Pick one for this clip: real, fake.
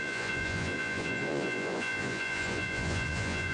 fake